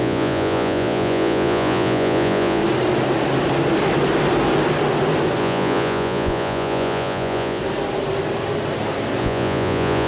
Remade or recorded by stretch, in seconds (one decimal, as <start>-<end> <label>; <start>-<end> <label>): 0.0-2.6 remade; 2.6-5.4 recorded; 5.4-7.6 remade; 7.6-9.2 recorded; 9.2-10.1 remade